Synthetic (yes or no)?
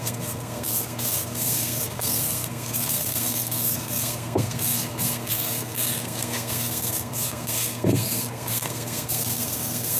yes